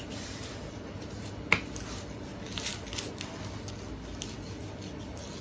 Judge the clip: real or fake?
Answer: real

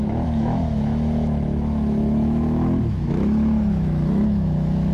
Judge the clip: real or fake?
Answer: fake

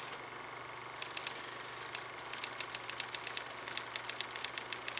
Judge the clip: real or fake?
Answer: real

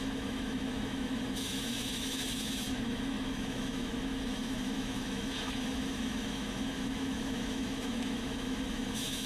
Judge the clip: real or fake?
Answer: fake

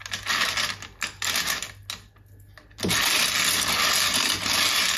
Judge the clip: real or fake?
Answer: real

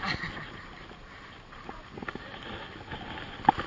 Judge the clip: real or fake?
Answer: real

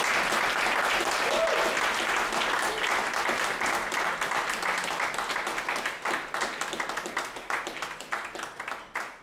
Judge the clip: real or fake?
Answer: real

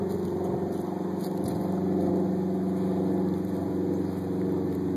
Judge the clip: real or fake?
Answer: real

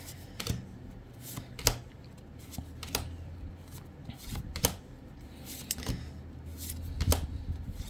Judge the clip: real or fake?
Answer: real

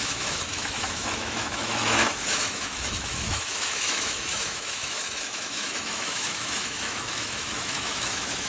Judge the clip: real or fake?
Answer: fake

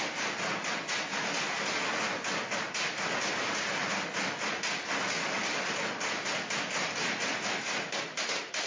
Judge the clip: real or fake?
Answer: real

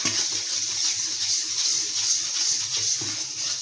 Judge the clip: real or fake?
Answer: real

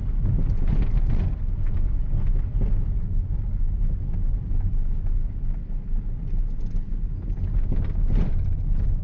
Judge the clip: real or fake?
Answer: real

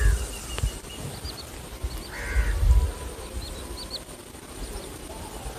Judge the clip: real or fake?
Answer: real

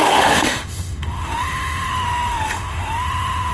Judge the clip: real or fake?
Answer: fake